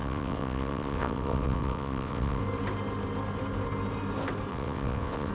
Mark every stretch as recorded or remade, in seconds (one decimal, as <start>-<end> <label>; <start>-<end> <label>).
0.0-2.4 remade; 2.4-4.5 recorded; 4.5-5.3 remade